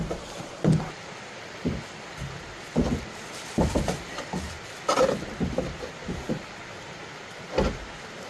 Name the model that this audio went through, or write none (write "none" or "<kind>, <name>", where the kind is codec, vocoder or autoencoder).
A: none